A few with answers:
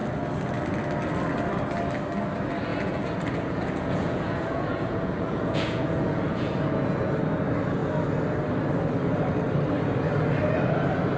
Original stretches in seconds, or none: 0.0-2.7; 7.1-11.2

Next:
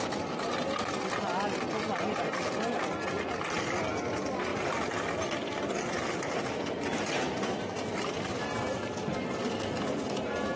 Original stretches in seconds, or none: 0.0-4.5; 6.3-10.6

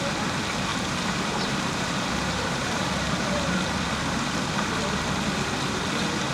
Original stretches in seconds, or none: 0.0-0.7; 3.4-6.3

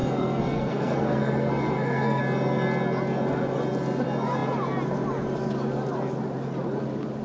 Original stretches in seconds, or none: 2.2-7.2